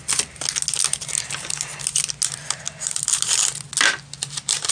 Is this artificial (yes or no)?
no